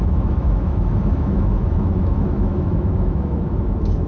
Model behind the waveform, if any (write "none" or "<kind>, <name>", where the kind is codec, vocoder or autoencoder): autoencoder, DAC-VAE